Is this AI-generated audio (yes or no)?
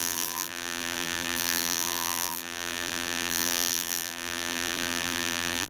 yes